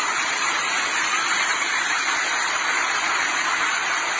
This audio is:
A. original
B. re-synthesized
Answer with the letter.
A